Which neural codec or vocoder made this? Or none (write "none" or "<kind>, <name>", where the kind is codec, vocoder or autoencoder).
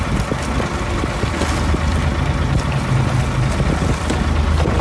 none